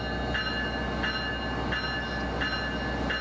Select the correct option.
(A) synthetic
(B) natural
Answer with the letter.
B